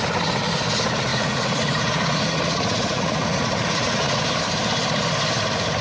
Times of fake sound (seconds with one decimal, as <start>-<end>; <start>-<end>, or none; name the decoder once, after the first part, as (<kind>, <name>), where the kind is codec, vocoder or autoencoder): 1.1-4.2 (vocoder, Vocos)